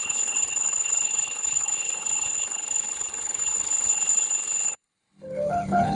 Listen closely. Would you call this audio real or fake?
fake